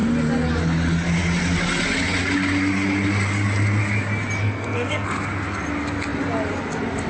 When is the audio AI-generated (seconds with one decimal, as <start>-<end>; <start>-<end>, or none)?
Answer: 4.4-5.2